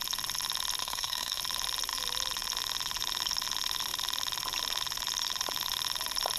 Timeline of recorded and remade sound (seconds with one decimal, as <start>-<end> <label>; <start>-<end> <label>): 0.0-0.8 recorded; 0.8-1.4 remade; 1.4-6.4 recorded

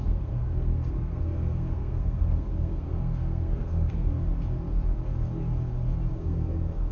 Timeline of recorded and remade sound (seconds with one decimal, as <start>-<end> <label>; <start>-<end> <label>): 0.0-4.1 remade; 4.1-6.1 recorded; 6.1-6.9 remade

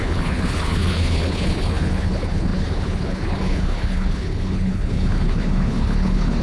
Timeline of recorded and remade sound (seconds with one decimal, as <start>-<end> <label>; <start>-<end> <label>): 0.0-6.4 remade

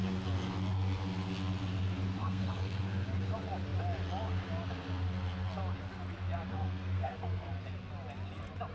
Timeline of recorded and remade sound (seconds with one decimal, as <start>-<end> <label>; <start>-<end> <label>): 0.0-2.2 recorded; 2.2-2.8 remade; 2.8-6.5 recorded; 6.5-7.5 remade; 7.5-8.7 recorded

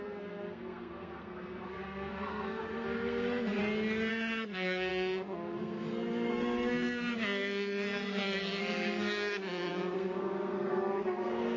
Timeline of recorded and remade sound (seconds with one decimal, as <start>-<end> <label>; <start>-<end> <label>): 0.0-3.6 remade; 3.6-4.1 recorded; 4.1-11.6 remade

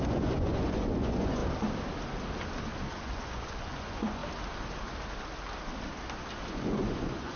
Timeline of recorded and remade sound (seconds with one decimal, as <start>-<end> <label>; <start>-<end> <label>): 0.0-1.4 remade; 1.4-2.9 recorded; 2.9-4.2 remade; 4.2-6.5 recorded; 6.5-7.4 remade

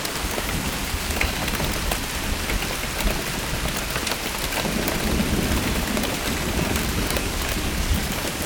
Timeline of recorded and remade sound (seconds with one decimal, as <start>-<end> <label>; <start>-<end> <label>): 0.0-1.4 remade; 1.4-6.5 recorded; 6.5-8.5 remade